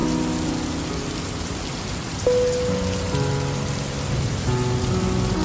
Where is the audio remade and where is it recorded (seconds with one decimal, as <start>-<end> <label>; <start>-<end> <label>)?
0.0-5.4 recorded